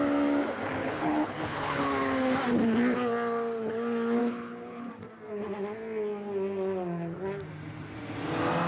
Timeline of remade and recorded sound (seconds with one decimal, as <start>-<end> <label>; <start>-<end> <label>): 0.0-0.8 recorded; 0.8-1.8 remade; 1.8-4.2 recorded; 4.2-4.9 remade; 4.9-8.7 recorded